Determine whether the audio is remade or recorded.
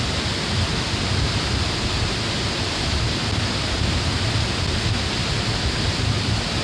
recorded